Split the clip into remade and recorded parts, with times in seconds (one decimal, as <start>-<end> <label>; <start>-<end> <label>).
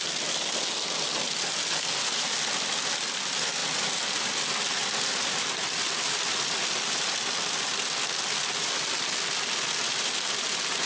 0.0-10.9 recorded